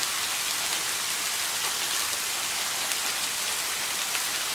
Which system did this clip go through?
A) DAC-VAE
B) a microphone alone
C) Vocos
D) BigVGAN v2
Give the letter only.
B